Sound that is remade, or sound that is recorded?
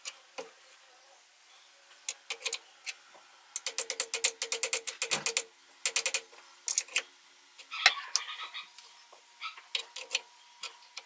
recorded